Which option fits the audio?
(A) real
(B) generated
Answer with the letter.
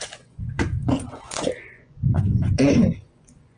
B